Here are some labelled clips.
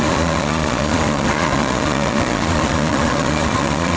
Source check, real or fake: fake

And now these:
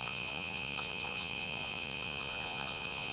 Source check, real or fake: fake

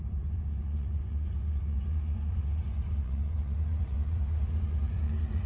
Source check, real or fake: fake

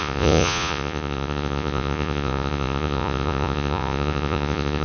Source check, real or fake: fake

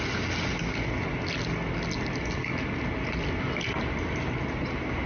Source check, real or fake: real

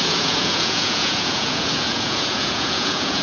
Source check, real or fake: fake